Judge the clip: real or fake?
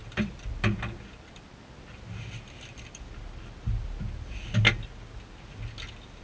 real